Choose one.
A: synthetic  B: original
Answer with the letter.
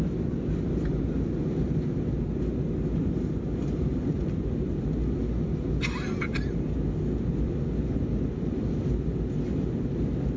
B